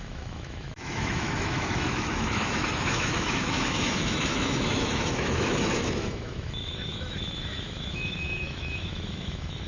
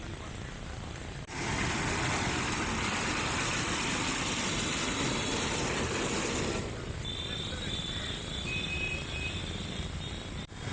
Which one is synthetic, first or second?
first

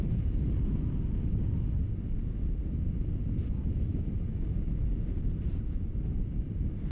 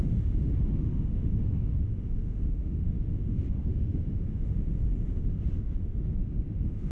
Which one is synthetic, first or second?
second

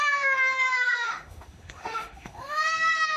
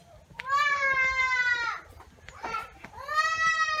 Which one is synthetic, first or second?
first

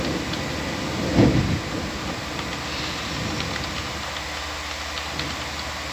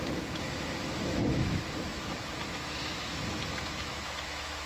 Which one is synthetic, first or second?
second